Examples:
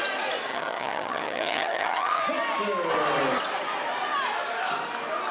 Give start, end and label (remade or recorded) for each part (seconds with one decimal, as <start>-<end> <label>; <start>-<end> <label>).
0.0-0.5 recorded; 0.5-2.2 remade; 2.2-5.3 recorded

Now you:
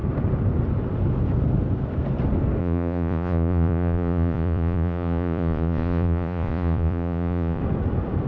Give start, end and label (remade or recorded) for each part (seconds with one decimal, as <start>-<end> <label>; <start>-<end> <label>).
0.0-2.6 recorded; 2.6-7.6 remade; 7.6-8.3 recorded

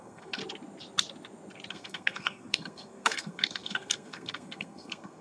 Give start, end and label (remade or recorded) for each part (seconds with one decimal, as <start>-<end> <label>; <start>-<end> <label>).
0.0-0.4 remade; 0.4-1.7 recorded; 1.7-5.2 remade

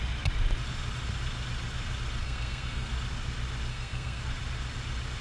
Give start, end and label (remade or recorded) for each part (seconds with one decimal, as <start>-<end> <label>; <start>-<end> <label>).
0.0-2.2 recorded; 2.2-2.9 remade; 2.9-3.7 recorded; 3.7-4.2 remade; 4.2-5.2 recorded

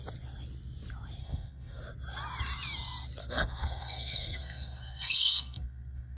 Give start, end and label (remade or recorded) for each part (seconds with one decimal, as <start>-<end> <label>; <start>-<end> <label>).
0.0-1.2 recorded; 1.2-1.8 remade; 1.8-3.2 recorded; 3.2-6.2 remade

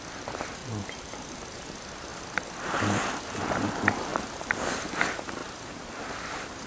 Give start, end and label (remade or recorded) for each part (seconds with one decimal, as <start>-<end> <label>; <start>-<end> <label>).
0.0-0.6 recorded; 0.6-1.4 remade; 1.4-4.1 recorded; 4.1-4.8 remade; 4.8-6.7 recorded